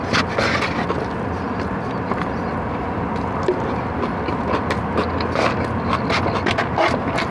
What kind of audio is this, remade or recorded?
recorded